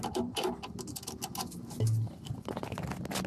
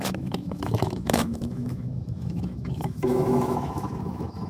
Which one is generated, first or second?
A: second